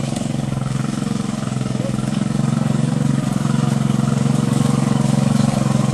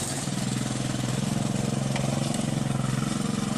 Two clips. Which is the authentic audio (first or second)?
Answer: second